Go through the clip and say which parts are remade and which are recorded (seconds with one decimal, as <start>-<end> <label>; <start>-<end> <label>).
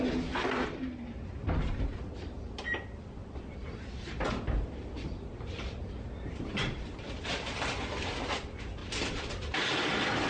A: 0.0-3.2 recorded; 3.2-8.0 remade; 8.0-8.8 recorded; 8.8-9.3 remade; 9.3-10.3 recorded